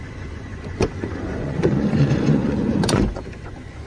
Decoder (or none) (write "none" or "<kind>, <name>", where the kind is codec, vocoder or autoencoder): vocoder, Vocos